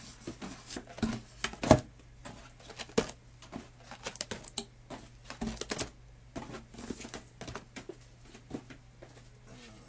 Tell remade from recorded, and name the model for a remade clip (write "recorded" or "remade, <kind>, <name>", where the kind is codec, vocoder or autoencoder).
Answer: recorded